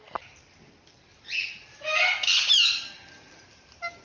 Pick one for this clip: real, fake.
real